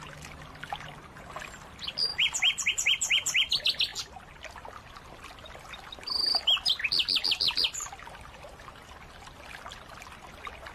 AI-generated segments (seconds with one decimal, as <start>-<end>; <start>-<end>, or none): none